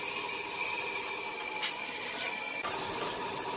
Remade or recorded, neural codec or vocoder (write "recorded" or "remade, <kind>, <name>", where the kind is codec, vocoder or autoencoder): remade, vocoder, BigVGAN v2